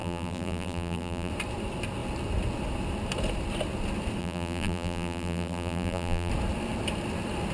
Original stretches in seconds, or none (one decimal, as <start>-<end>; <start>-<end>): 1.3-4.2; 6.3-7.5